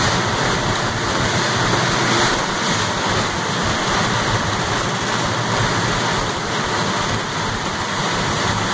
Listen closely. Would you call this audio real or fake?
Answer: real